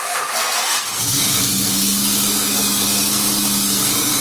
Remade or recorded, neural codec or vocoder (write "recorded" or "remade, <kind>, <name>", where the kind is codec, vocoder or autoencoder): remade, codec, SNAC